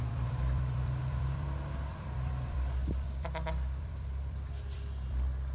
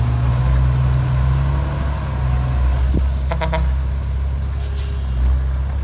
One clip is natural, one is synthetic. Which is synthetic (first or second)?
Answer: first